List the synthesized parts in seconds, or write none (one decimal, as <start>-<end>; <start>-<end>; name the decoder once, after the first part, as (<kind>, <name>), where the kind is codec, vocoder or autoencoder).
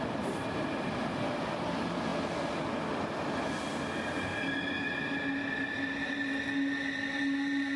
none